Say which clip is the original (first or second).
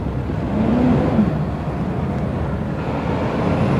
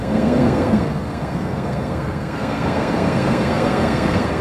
first